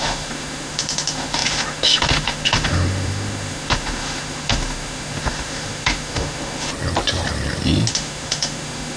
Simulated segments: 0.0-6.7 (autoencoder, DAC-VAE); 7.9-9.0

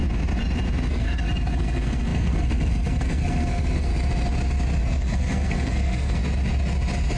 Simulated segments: 0.9-3.9 (codec, SNAC); 4.8-6.2

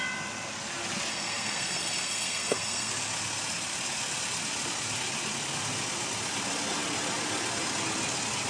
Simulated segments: 1.1-2.9 (codec, SNAC)

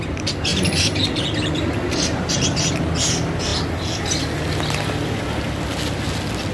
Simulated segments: 0.5-2.7 (vocoder, BigVGAN v2)